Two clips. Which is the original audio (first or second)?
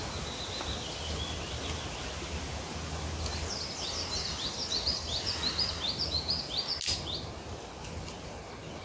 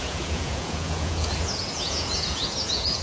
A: first